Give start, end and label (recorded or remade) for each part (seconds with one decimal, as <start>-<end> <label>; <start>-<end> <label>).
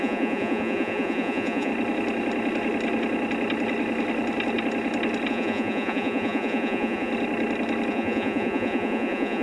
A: 0.0-1.7 remade; 1.7-5.3 recorded; 5.3-7.1 remade; 7.1-7.9 recorded; 7.9-9.4 remade